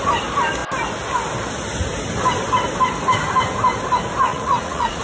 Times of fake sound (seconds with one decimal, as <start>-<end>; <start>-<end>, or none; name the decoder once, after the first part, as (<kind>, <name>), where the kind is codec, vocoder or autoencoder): 4.3-5.0 (vocoder, Vocos)